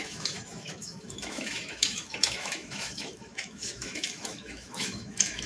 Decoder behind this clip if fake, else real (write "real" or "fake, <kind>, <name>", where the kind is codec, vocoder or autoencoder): fake, autoencoder, DAC-VAE